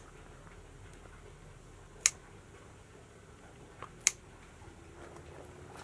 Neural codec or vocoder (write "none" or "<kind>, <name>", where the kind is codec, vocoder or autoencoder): none